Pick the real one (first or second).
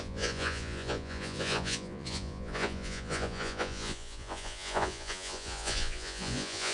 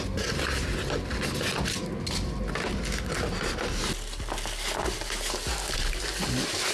second